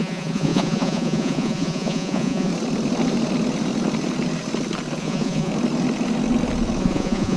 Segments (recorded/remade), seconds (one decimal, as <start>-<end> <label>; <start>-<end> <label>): 0.0-2.5 remade; 2.5-5.0 recorded; 5.0-5.5 remade; 5.5-6.8 recorded; 6.8-7.4 remade